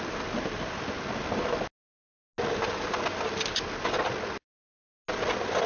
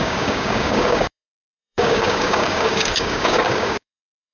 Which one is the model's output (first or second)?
second